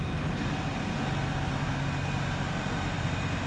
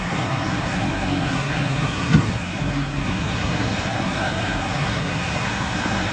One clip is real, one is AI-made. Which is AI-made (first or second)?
second